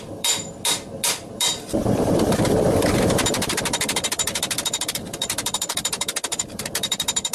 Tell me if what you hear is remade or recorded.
remade